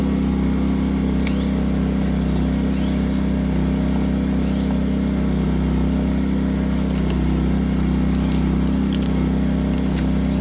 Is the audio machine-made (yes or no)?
no